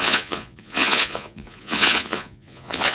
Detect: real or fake fake